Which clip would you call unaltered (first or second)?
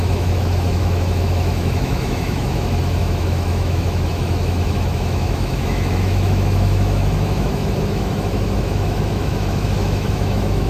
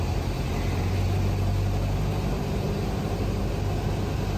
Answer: second